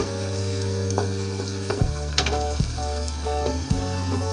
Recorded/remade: remade